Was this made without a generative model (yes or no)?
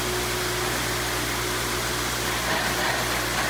yes